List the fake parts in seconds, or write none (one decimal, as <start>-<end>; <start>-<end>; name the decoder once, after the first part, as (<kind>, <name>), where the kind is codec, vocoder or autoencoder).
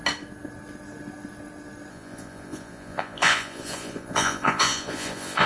1.9-5.5 (vocoder, Vocos)